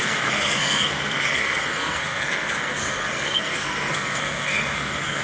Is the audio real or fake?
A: fake